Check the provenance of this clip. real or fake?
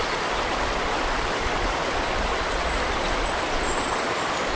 real